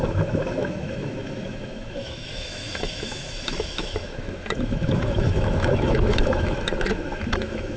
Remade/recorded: remade